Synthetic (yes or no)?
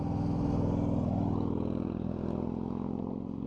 no